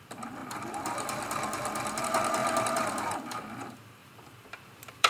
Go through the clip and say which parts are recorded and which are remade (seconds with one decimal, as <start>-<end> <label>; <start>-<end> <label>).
0.0-0.4 recorded; 0.4-2.0 remade; 2.0-2.4 recorded; 2.4-3.2 remade; 3.2-4.0 recorded; 4.0-5.1 remade